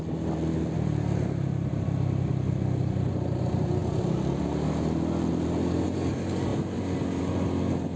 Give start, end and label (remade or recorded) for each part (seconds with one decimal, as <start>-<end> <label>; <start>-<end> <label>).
0.0-8.0 recorded